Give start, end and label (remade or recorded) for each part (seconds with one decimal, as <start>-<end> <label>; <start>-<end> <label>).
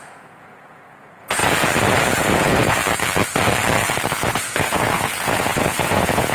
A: 0.0-1.4 remade; 1.4-2.2 recorded; 2.2-2.8 remade; 2.8-4.3 recorded; 4.3-6.3 remade